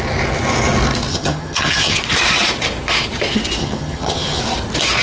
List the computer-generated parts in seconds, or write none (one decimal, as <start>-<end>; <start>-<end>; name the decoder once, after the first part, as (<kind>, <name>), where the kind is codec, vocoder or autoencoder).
1.1-2.0 (vocoder, HiFi-GAN); 3.6-4.4